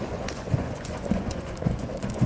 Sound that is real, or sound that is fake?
fake